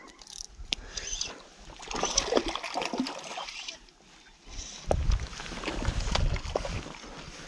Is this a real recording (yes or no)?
yes